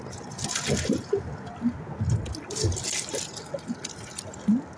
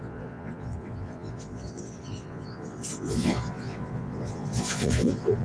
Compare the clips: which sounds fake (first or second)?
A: second